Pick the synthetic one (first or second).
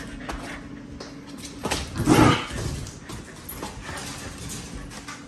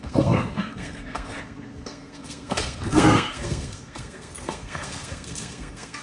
second